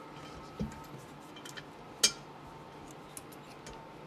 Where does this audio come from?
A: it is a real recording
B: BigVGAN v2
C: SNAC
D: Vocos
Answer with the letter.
A